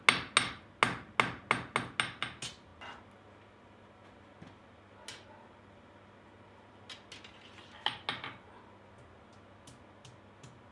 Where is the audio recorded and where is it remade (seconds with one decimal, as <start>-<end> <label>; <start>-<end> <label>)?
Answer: 0.0-10.7 recorded